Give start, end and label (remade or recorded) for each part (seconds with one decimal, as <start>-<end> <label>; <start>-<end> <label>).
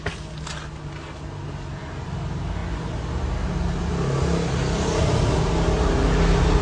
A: 0.0-6.6 recorded